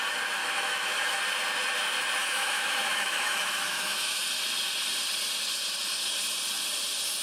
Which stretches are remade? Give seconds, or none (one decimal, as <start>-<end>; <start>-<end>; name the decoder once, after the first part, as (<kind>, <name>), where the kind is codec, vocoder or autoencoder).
0.4-1.2 (autoencoder, DAC-VAE); 2.2-4.2